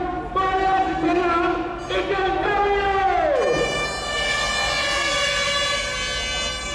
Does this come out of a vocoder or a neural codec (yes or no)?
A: no